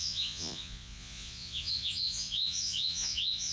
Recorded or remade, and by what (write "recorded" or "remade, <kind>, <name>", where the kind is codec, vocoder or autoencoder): remade, vocoder, Vocos